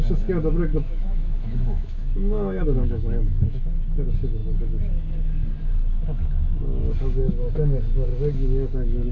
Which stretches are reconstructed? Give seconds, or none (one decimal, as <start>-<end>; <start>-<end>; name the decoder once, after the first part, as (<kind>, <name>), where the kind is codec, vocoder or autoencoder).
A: 0.7-3.6 (autoencoder, DAC-VAE)